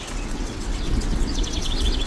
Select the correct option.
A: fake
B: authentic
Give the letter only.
A